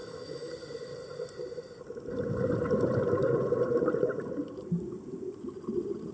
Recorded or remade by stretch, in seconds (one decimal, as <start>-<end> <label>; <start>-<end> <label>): 0.0-0.5 remade; 0.5-6.1 recorded